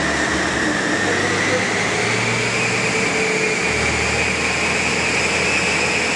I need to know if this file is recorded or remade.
recorded